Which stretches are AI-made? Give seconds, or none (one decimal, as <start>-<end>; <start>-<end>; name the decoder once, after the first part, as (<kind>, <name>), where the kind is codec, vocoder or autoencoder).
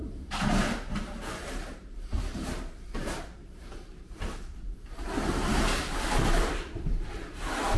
0.0-5.5 (vocoder, BigVGAN v2); 6.2-7.8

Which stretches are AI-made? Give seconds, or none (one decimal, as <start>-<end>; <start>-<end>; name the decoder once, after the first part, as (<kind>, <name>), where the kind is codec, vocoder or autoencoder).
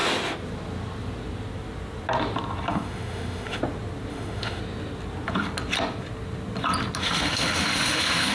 2.7-3.6 (autoencoder, DAC-VAE); 4.1-4.6; 7.0-8.3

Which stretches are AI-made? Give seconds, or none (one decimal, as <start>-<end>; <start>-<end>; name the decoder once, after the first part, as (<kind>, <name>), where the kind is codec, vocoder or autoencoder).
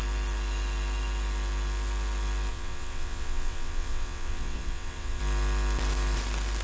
2.5-5.2 (vocoder, WaveNeXt)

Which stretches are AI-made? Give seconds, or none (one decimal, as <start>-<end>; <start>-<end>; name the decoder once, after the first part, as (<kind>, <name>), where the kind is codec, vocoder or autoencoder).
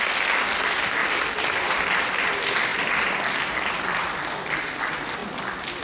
1.0-1.8 (vocoder, BigVGAN v2); 2.7-4.7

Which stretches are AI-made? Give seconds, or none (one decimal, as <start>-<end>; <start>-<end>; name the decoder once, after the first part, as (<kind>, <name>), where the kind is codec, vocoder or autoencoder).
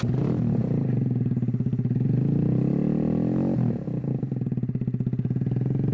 none